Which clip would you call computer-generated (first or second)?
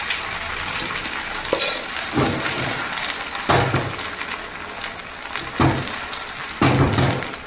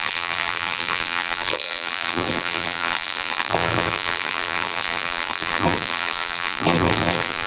second